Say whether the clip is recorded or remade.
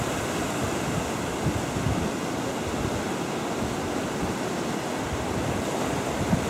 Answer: recorded